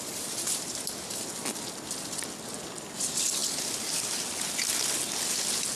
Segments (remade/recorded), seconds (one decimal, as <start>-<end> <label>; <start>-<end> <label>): 0.0-5.7 recorded